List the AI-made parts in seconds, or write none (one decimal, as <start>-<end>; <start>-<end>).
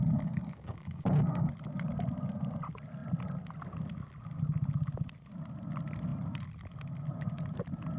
0.0-1.5